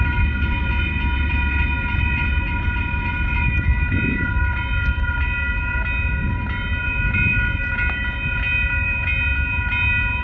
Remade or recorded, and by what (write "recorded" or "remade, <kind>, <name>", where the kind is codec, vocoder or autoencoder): recorded